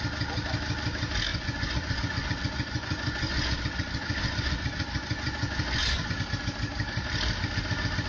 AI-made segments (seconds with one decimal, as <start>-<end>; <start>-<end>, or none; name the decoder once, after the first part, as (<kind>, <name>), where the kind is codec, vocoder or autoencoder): 1.3-6.2 (vocoder, Vocos)